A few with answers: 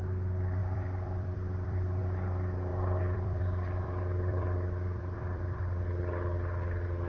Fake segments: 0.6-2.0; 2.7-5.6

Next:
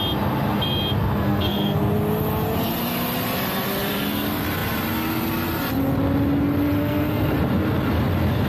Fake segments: 1.0-1.8; 6.8-7.3

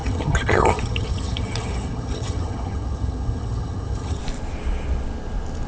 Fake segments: 0.0-4.2